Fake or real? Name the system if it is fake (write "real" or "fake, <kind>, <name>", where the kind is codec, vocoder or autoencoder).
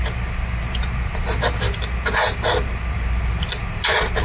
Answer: real